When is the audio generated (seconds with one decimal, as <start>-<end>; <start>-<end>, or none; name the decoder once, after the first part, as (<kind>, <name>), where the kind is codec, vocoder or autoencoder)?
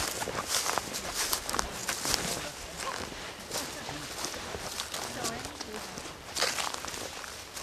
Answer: 1.8-2.8 (vocoder, BigVGAN v2)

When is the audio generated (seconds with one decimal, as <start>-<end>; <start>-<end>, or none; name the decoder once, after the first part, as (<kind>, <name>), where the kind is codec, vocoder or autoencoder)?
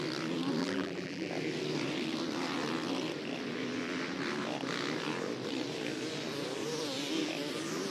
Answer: 0.6-1.3 (vocoder, BigVGAN v2)